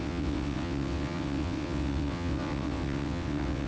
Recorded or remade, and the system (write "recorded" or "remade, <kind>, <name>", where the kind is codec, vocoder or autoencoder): remade, vocoder, WaveNeXt